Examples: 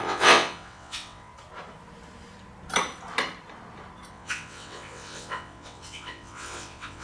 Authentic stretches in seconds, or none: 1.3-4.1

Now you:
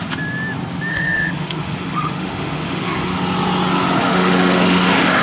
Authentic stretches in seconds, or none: 0.0-0.9; 3.2-4.0

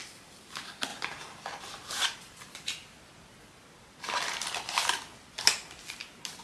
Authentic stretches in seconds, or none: 0.0-6.4